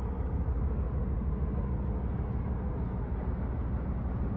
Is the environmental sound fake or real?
real